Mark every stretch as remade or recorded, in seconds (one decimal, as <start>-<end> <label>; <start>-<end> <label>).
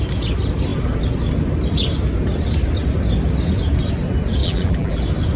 0.0-4.4 recorded; 4.4-5.0 remade; 5.0-5.4 recorded